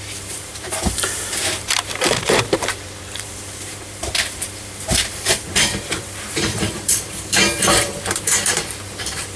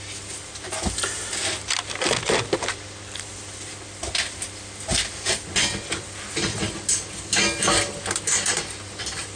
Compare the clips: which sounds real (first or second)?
second